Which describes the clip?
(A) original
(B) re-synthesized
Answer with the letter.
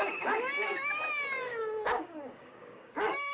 B